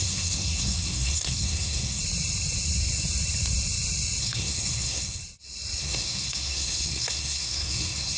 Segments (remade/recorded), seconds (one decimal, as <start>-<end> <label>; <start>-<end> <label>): 0.0-2.0 remade; 2.0-4.2 recorded; 4.2-5.2 remade; 5.2-5.8 recorded; 5.8-8.2 remade